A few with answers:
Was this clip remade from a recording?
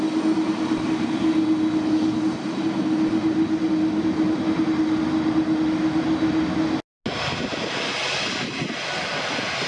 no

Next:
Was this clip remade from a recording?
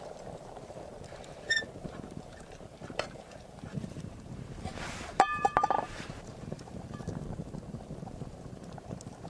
yes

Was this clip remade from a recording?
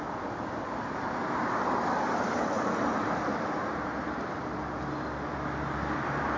no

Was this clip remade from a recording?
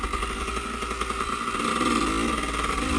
no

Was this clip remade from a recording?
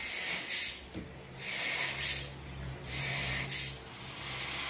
no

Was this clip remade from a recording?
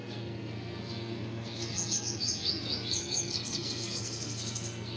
yes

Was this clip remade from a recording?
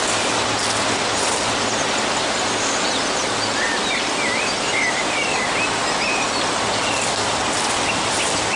no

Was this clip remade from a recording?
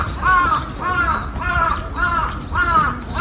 no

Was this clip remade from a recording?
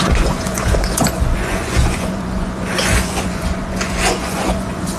yes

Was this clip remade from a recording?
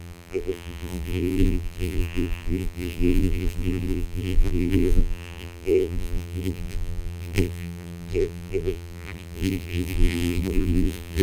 yes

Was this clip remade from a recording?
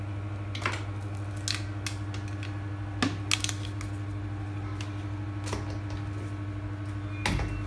no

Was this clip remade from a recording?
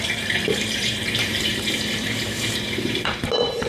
yes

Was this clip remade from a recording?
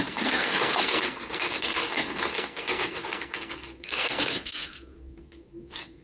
yes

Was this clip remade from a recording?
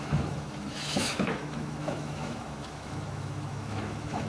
yes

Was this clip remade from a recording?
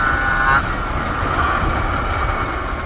no